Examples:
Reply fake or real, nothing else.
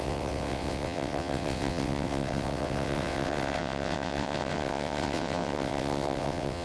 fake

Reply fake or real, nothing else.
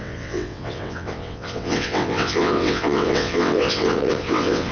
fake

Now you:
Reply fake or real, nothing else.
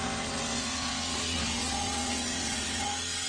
fake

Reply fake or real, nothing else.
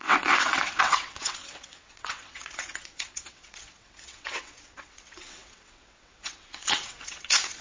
fake